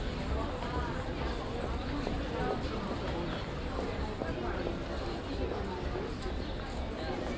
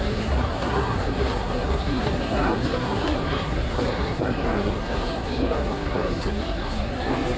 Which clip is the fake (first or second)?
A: second